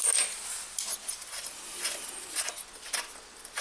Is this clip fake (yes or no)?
no